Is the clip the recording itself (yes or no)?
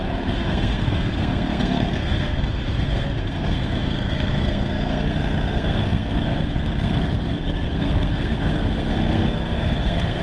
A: no